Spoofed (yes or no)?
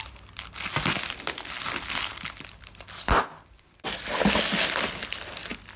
no